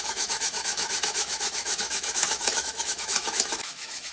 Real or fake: fake